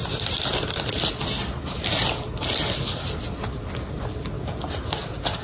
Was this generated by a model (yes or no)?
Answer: no